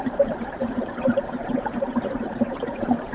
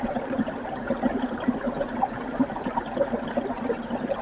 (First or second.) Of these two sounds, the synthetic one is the first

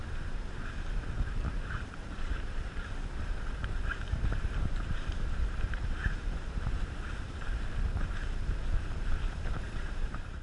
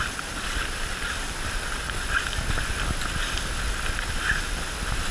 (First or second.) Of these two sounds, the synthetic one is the first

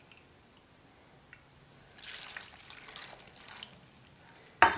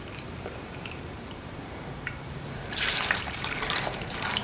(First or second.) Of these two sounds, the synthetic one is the second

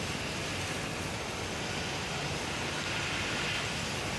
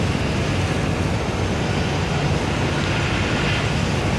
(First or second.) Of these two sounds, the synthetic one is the first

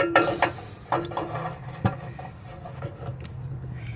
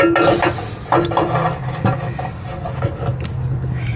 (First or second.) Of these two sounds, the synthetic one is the first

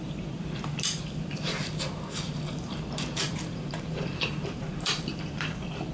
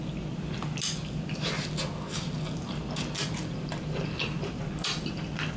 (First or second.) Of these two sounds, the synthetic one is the first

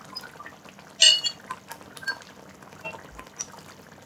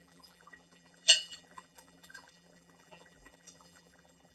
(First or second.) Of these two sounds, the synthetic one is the second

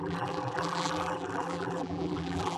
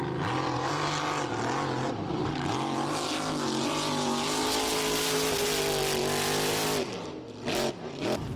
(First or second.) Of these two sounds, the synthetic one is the first